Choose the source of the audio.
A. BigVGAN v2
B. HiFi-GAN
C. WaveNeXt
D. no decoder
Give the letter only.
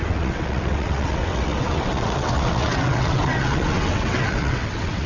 C